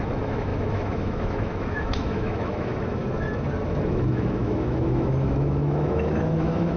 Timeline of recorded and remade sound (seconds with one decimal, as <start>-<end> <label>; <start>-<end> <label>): 0.0-3.0 remade; 3.0-3.7 recorded; 3.7-6.8 remade